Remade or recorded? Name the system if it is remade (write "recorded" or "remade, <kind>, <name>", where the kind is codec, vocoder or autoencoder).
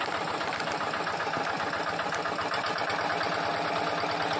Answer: recorded